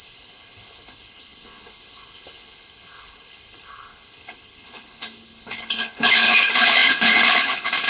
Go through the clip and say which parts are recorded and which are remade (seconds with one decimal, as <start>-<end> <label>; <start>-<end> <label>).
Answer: 0.0-7.9 remade